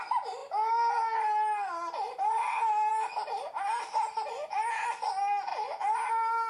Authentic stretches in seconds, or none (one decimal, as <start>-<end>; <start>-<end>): 0.0-6.5